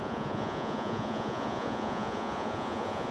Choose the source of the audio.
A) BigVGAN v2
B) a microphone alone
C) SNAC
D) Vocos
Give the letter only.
D